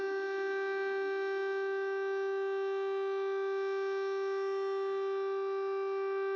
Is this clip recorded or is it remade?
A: recorded